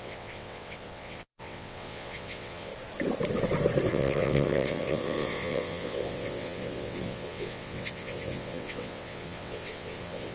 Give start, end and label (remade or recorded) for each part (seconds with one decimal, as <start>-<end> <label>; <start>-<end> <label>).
0.0-2.7 remade; 2.7-3.9 recorded; 3.9-10.3 remade